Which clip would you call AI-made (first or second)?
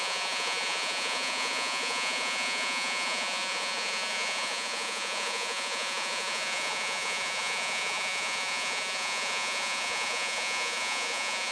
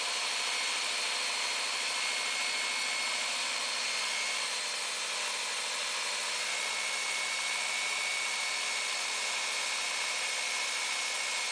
first